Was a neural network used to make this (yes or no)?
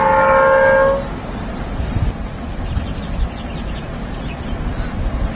no